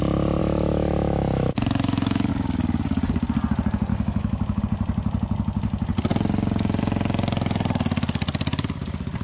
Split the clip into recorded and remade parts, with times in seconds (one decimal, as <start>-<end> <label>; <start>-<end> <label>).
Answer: 0.0-0.4 recorded; 0.4-2.3 remade; 2.3-3.9 recorded; 3.9-4.6 remade; 4.6-9.2 recorded